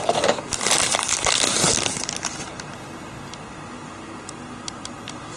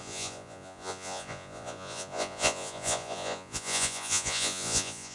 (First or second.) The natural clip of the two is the first